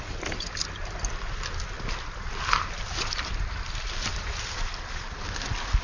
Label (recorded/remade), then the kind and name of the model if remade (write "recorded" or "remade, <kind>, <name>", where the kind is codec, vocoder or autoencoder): recorded